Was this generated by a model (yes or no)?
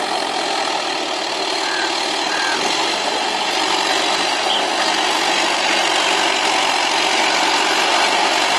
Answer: no